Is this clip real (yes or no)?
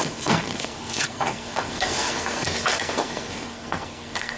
no